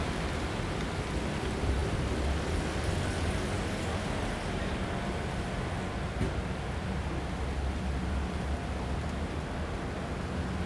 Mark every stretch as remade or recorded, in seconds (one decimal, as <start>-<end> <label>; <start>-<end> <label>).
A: 0.0-10.7 recorded